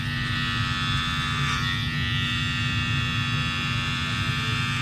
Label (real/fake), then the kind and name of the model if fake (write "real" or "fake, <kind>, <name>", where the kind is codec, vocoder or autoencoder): real